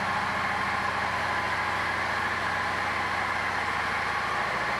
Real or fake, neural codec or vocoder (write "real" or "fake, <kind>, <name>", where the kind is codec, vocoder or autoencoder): real